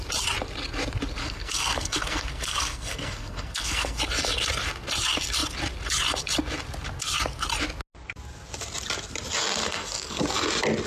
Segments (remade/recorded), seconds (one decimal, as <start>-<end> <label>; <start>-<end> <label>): 0.0-1.2 recorded; 1.2-4.0 remade; 4.0-9.6 recorded; 9.6-10.2 remade; 10.2-10.9 recorded